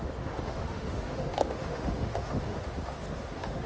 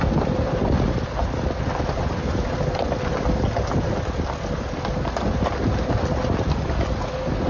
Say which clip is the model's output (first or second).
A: first